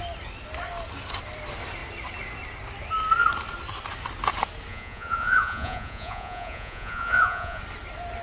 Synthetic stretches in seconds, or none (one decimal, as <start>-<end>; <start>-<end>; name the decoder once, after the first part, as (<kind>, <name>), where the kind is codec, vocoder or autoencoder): 4.7-7.6 (vocoder, Vocos)